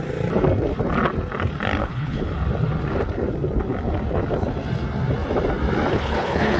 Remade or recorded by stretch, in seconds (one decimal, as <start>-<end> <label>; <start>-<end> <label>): 0.0-1.8 recorded; 1.8-2.3 remade; 2.3-5.9 recorded; 5.9-6.6 remade